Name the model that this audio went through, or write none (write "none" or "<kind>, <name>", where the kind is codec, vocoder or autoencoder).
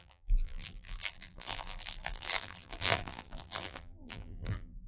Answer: vocoder, BigVGAN v2